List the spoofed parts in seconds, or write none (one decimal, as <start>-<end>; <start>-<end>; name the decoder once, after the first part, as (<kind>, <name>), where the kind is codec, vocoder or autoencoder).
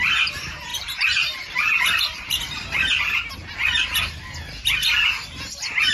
0.7-3.0 (vocoder, BigVGAN v2)